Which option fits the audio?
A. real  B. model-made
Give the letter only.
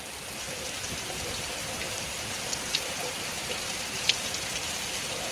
B